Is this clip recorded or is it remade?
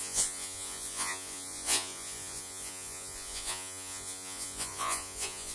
remade